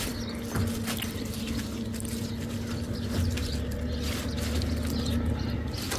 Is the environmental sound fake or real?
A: real